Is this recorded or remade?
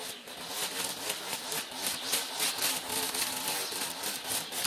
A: recorded